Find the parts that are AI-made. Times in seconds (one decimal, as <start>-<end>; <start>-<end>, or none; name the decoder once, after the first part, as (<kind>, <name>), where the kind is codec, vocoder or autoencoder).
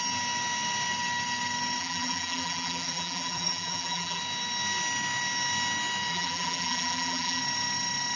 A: 1.8-4.2 (vocoder, BigVGAN v2); 6.1-7.4